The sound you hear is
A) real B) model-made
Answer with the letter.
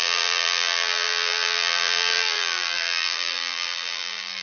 B